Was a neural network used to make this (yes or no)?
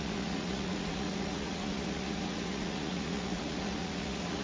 yes